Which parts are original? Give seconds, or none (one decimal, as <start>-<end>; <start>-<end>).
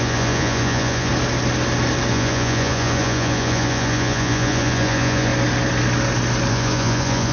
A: 1.1-2.1; 5.3-6.5